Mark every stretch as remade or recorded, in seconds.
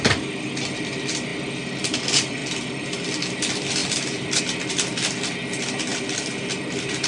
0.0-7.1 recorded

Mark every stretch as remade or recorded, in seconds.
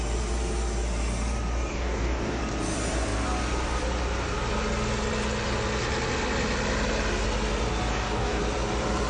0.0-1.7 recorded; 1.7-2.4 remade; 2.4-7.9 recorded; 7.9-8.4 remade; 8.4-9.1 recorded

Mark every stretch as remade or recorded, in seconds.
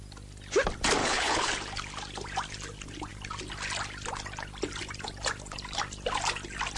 0.0-1.0 recorded; 1.0-1.5 remade; 1.5-6.8 recorded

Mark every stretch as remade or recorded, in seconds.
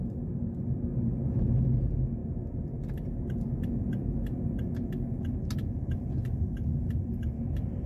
0.0-5.6 recorded; 5.6-6.4 remade; 6.4-7.9 recorded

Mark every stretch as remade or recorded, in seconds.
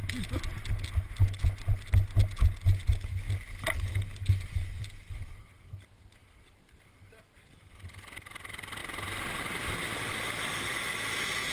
0.0-11.5 recorded